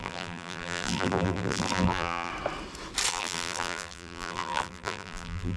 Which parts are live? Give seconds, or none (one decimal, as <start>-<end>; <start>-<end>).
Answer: 2.3-3.1